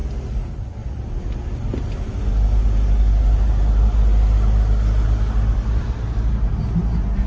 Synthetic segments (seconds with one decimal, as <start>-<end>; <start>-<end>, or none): none